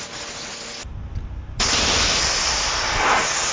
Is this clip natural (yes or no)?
yes